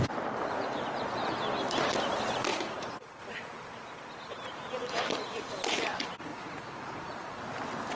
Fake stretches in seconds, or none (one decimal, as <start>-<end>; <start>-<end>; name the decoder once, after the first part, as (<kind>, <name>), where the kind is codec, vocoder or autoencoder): 2.5-3.2 (vocoder, Vocos); 6.3-7.3